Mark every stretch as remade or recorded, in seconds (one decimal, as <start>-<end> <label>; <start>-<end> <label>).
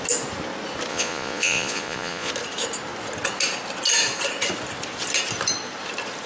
0.0-0.9 recorded; 0.9-2.3 remade; 2.3-6.3 recorded